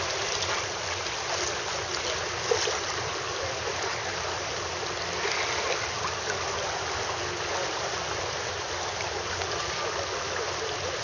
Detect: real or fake real